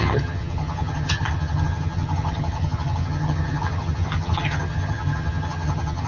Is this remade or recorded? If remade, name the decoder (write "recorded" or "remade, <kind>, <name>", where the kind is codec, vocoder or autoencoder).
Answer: remade, vocoder, HiFi-GAN